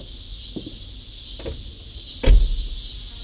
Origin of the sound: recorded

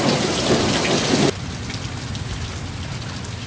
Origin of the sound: recorded